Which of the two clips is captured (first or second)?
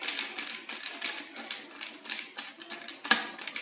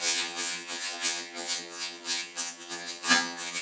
first